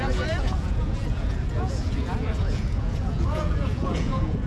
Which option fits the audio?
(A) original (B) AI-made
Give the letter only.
B